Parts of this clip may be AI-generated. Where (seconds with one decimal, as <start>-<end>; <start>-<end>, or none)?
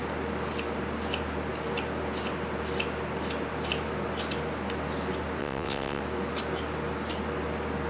5.4-6.0